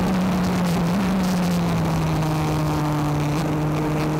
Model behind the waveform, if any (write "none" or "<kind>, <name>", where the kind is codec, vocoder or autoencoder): none